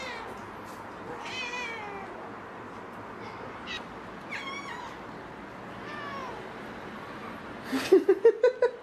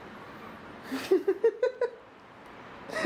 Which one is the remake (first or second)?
second